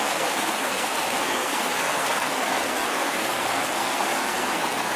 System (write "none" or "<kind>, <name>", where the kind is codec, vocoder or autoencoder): codec, SNAC